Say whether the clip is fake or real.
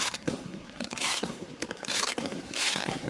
fake